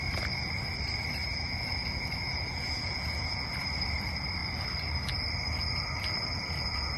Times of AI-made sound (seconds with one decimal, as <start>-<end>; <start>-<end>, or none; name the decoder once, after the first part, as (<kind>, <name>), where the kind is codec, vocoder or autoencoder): 1.2-3.5 (vocoder, Vocos)